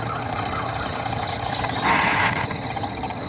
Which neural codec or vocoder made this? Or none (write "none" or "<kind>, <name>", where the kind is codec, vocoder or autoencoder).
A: vocoder, HiFi-GAN